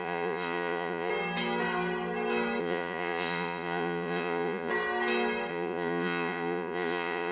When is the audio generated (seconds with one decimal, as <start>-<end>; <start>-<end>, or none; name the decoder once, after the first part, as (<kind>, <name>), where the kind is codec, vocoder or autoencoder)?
0.0-1.1 (vocoder, Vocos); 2.6-4.7; 5.5-7.3